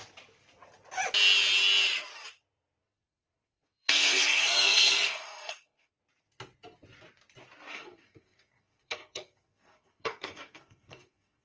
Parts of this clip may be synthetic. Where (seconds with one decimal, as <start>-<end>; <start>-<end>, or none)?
2.8-5.9; 7.7-11.4